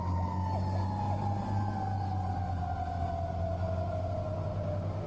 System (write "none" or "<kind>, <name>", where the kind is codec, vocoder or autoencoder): none